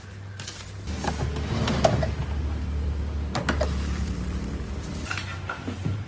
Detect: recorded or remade recorded